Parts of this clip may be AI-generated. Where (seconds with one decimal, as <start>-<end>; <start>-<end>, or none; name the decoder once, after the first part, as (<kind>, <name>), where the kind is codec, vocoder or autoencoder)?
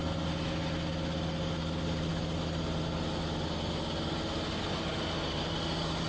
none